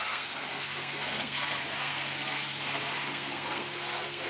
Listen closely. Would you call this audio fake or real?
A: fake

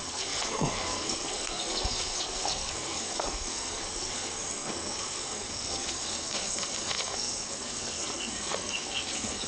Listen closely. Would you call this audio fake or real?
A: fake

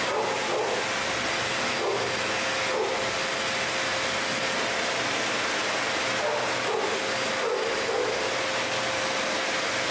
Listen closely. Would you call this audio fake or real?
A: real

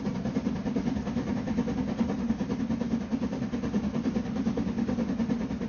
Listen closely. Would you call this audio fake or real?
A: real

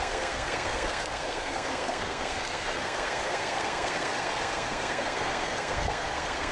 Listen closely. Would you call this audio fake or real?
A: fake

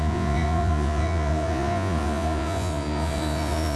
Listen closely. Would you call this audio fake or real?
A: fake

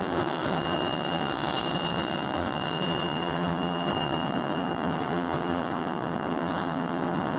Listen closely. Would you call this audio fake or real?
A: fake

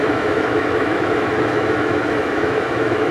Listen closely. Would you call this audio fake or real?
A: fake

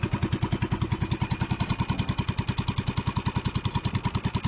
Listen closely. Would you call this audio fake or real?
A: real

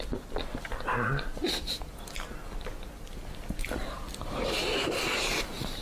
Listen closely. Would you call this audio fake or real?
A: real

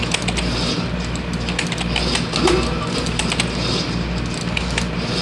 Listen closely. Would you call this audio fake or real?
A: real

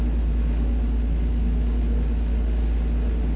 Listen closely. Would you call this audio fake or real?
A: real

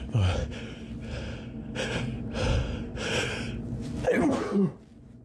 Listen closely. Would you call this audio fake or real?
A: real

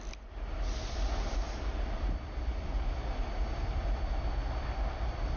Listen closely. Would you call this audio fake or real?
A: fake